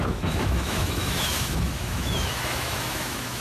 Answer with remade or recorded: remade